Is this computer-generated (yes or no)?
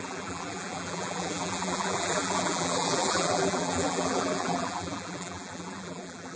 yes